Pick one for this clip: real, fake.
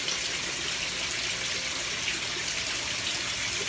real